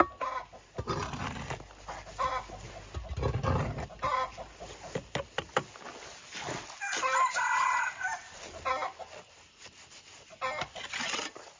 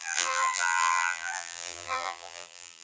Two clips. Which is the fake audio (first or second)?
second